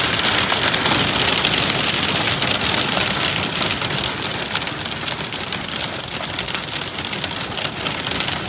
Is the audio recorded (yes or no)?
yes